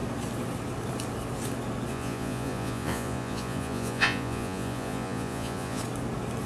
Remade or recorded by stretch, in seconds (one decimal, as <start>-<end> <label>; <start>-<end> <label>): 0.0-1.9 recorded; 1.9-5.8 remade; 5.8-6.5 recorded